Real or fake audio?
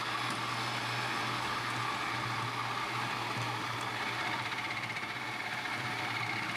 real